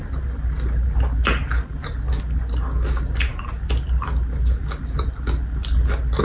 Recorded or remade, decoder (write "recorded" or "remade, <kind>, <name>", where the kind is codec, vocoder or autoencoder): recorded